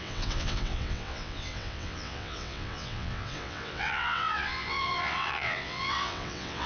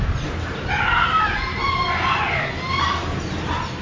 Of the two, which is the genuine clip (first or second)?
second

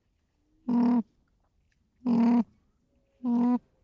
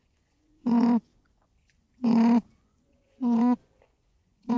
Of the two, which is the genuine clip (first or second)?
first